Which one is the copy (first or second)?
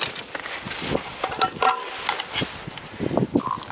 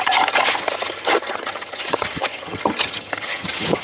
second